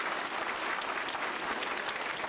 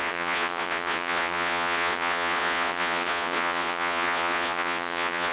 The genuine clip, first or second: first